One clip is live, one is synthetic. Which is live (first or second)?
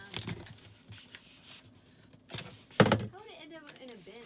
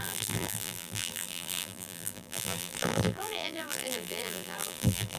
first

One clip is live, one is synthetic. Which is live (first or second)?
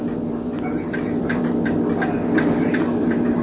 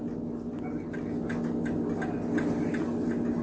second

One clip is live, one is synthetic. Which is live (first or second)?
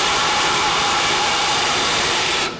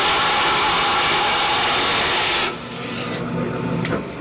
second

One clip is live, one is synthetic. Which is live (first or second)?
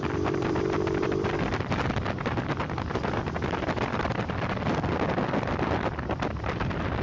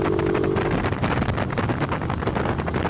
second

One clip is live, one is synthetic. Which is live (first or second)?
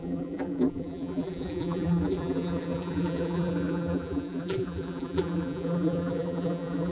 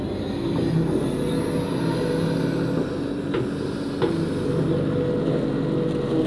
second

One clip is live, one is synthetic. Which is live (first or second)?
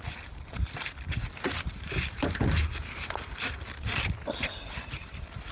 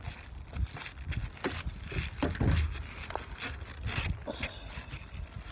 second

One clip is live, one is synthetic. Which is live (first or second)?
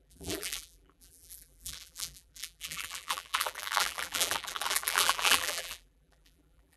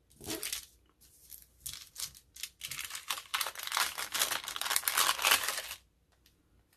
second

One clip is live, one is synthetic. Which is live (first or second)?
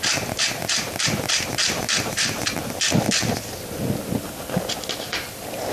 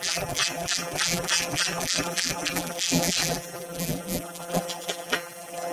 first